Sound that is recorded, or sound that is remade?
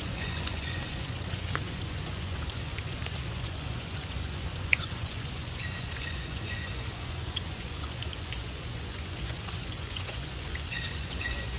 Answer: remade